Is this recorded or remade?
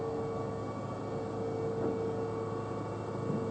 recorded